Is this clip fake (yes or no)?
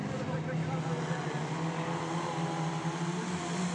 no